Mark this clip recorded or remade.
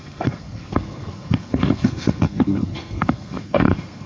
remade